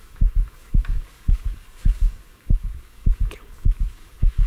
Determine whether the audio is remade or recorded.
remade